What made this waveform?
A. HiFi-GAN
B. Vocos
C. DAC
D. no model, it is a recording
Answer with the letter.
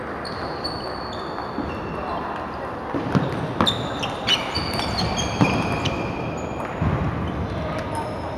D